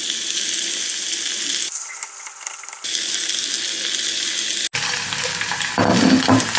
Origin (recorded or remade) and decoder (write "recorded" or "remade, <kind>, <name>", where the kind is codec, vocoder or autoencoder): recorded